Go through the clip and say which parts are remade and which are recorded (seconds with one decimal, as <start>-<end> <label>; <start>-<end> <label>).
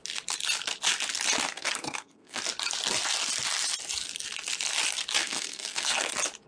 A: 0.0-1.4 recorded; 1.4-2.4 remade; 2.4-5.2 recorded; 5.2-6.1 remade; 6.1-6.5 recorded